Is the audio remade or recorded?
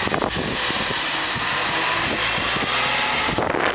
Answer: recorded